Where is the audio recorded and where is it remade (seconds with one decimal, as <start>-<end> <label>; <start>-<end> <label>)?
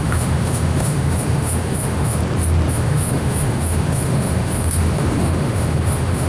0.0-2.2 remade; 2.2-2.7 recorded; 2.7-6.3 remade